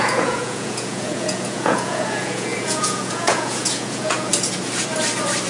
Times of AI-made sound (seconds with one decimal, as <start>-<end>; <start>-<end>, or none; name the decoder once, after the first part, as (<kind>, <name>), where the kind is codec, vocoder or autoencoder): 0.0-4.3 (vocoder, Vocos)